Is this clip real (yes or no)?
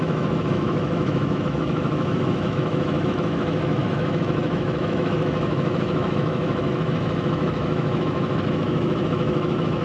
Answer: no